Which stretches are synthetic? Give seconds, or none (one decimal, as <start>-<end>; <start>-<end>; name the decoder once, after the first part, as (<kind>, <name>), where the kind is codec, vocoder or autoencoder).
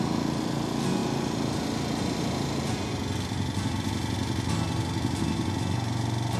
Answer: none